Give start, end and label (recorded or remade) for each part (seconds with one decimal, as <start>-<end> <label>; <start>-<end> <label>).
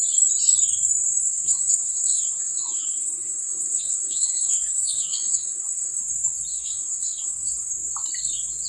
0.0-1.3 recorded; 1.3-6.0 remade; 6.0-6.5 recorded; 6.5-7.7 remade; 7.7-8.7 recorded